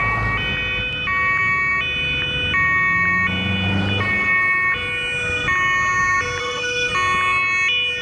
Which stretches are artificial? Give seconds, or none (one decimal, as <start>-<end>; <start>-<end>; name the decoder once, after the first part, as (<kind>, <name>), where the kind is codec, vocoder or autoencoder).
6.4-6.9 (autoencoder, DAC-VAE)